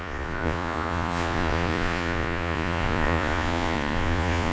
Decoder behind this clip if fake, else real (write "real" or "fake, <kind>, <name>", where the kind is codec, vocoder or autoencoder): fake, vocoder, Vocos